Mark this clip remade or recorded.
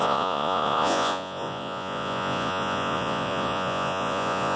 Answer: remade